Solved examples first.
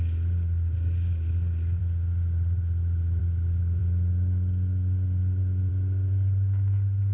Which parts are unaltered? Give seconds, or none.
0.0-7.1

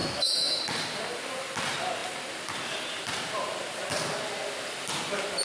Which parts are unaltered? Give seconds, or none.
0.6-5.4

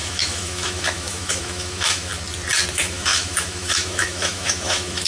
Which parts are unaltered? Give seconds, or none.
2.1-2.7

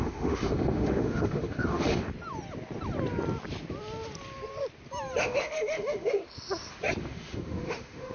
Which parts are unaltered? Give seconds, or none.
2.1-5.2; 6.2-7.0

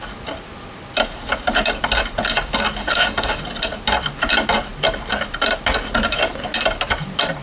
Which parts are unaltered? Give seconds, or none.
0.0-2.8; 3.4-7.4

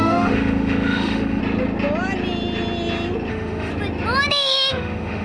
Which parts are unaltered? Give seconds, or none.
1.4-3.3; 3.7-4.3

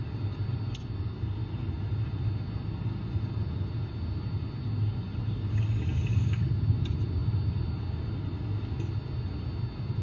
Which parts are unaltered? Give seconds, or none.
0.0-10.0

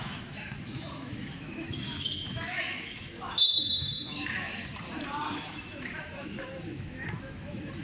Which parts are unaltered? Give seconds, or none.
4.5-5.3